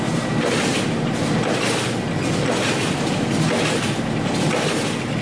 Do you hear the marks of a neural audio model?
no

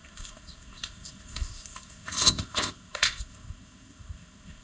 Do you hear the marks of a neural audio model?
yes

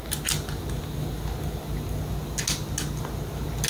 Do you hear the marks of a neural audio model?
no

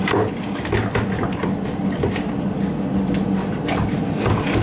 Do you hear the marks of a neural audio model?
no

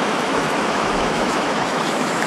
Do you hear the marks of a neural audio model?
yes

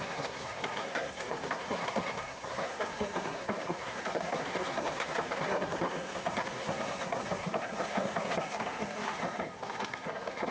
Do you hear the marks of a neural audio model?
yes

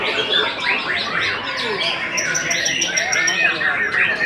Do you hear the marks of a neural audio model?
no